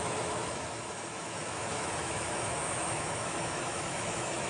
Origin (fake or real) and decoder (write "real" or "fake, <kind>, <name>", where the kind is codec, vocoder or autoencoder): fake, autoencoder, DAC-VAE